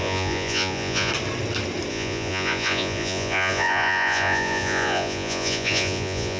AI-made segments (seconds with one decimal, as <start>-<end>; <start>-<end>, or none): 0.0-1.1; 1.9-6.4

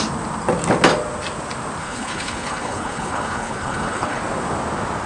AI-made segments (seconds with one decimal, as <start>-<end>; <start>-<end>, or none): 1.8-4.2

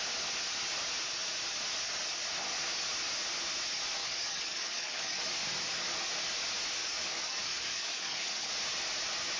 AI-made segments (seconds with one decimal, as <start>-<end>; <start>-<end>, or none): 4.0-5.2; 6.8-8.5

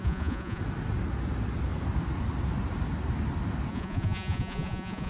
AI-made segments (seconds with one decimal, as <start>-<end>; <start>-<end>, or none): 0.0-0.6; 3.7-5.1

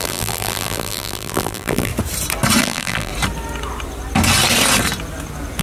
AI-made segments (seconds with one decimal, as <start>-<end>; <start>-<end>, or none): 0.0-1.9; 2.6-3.1

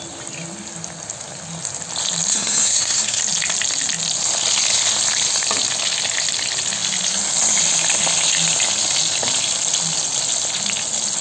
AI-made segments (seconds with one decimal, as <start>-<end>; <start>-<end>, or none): 2.3-3.2

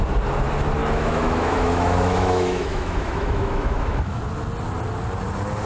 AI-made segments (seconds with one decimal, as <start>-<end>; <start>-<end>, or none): 0.8-4.2